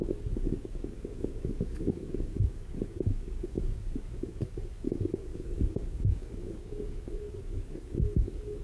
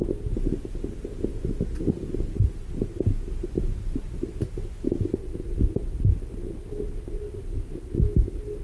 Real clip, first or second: second